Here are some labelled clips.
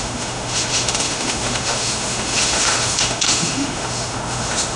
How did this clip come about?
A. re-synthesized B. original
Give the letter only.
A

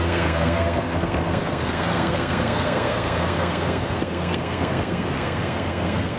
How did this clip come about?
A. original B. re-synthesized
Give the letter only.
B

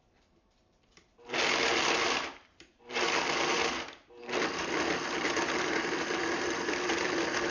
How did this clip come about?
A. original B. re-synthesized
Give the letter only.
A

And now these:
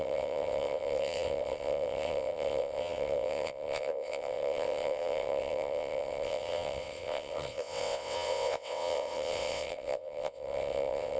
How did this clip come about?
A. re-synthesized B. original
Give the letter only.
A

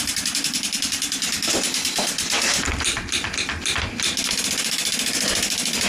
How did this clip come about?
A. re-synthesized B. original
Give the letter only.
B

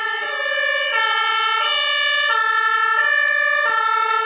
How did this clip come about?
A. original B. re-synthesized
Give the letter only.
A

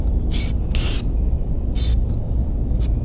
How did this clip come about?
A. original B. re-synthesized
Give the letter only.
A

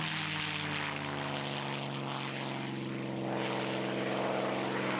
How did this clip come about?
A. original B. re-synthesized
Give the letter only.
A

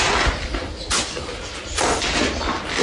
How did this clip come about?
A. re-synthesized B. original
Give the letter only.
B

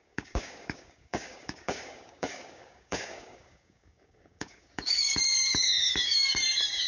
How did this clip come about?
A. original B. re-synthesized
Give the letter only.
B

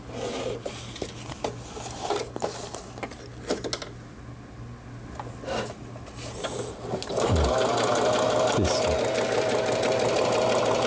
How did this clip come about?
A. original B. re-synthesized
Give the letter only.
A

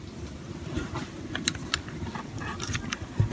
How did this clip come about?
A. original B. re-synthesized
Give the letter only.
B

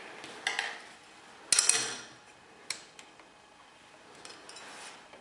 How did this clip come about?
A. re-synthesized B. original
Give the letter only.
B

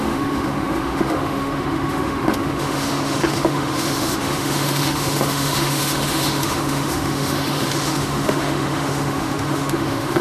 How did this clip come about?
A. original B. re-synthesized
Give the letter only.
B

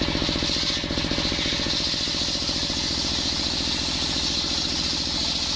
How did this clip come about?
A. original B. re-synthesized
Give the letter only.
A